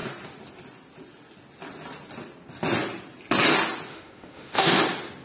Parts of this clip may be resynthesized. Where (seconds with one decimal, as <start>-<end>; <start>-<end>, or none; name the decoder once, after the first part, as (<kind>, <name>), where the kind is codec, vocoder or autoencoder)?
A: 3.9-4.8 (autoencoder, DAC-VAE)